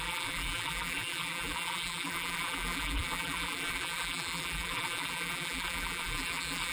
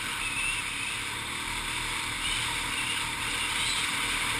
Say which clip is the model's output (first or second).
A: first